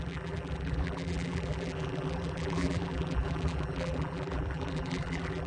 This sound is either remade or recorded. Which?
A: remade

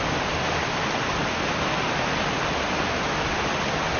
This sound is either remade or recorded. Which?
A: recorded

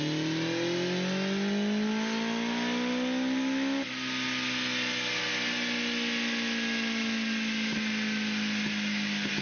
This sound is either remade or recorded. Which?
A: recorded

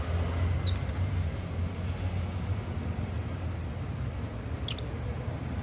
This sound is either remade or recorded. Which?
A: recorded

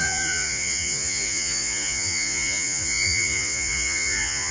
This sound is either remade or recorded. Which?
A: remade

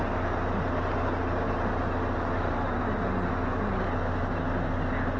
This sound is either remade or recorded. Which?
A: recorded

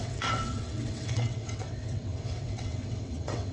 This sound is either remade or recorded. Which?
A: remade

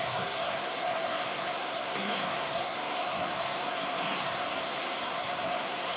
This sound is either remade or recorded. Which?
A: remade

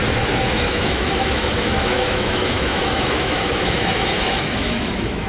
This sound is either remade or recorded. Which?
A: remade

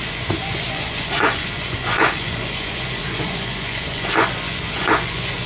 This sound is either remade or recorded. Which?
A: remade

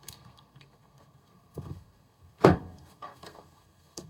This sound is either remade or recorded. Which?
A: remade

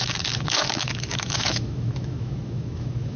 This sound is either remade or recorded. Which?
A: remade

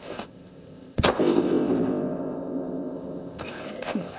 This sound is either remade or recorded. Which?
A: remade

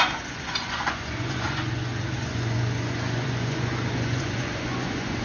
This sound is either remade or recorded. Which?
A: remade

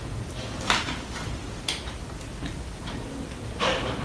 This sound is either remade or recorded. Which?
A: recorded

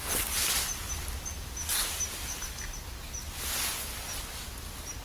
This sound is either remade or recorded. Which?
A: recorded